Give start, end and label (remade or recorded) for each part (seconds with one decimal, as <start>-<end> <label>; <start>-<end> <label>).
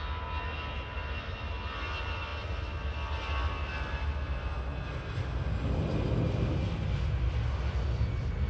0.0-8.5 recorded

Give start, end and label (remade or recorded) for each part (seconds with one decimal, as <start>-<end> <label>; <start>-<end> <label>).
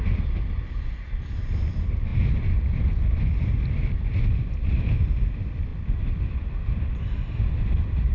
0.0-8.1 recorded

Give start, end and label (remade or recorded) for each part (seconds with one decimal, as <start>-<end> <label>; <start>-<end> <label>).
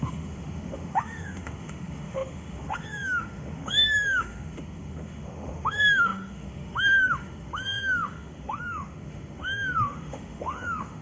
0.0-11.0 remade